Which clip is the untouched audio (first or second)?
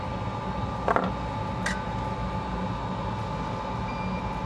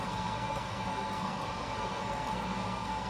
first